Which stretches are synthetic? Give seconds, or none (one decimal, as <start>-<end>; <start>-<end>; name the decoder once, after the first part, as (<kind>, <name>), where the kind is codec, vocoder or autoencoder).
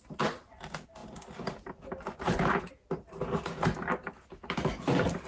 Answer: none